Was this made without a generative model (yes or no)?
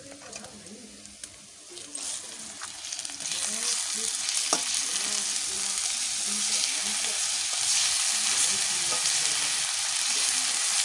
yes